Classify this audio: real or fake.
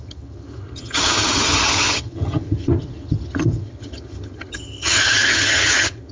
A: fake